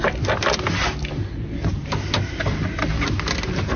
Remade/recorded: recorded